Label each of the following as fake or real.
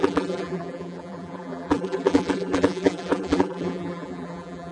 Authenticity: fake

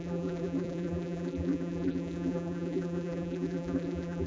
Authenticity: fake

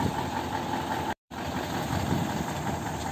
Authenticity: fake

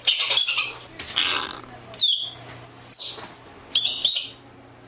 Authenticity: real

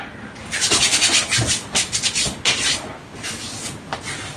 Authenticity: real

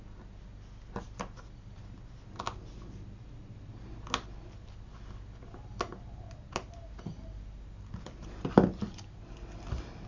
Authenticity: real